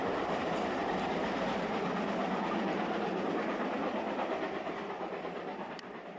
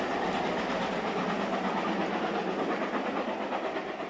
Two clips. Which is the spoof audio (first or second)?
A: first